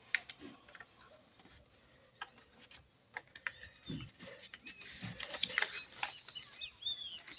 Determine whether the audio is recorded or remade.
recorded